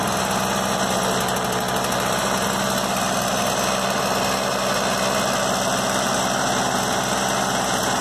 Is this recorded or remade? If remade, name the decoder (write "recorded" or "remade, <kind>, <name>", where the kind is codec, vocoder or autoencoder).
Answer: recorded